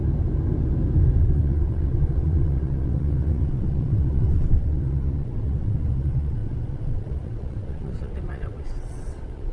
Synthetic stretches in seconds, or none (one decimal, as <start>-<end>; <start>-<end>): 1.2-9.5